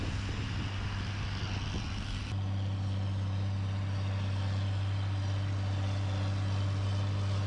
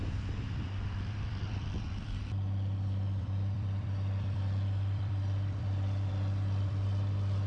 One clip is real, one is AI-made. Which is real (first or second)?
first